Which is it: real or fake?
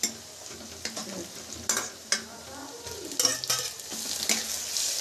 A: real